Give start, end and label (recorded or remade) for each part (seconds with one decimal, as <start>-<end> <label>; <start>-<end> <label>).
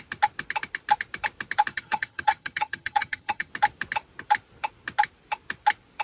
0.0-1.7 recorded; 1.7-3.5 remade; 3.5-6.0 recorded